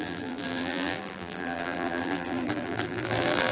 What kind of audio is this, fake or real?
fake